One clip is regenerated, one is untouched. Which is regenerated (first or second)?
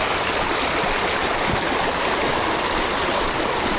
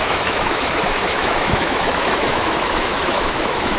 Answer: second